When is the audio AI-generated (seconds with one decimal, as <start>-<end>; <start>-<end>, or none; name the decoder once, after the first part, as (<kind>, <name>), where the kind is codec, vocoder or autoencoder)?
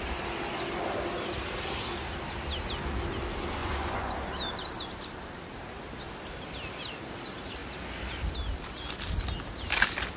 3.6-4.1 (vocoder, Vocos)